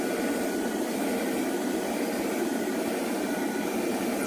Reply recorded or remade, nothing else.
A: remade